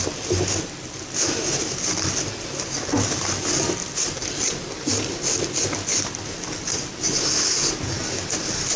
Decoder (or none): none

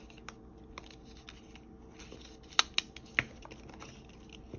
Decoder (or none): none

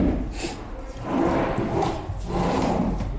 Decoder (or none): none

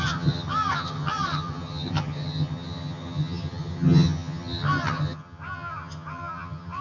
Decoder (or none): vocoder, HiFi-GAN